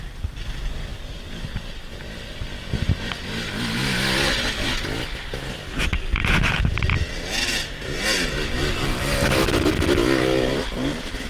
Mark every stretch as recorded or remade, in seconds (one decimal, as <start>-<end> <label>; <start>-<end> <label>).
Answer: 0.0-11.3 recorded